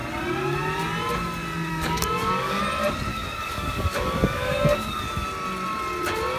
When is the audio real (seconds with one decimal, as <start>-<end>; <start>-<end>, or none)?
0.0-1.7; 2.6-3.1; 5.0-6.4